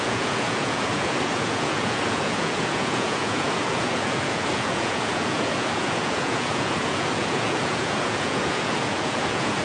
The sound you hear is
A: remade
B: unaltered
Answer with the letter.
A